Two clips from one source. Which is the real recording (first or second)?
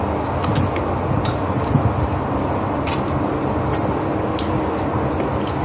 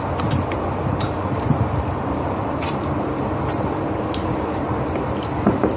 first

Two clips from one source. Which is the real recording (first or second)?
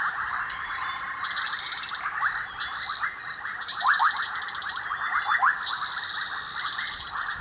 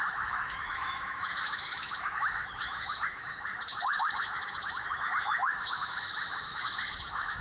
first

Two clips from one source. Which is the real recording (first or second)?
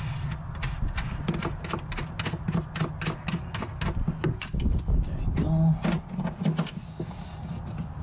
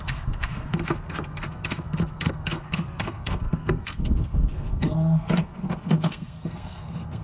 first